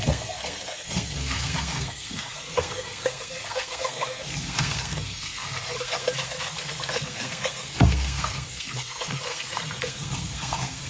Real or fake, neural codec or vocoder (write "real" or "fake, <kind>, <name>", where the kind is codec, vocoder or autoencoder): fake, codec, SNAC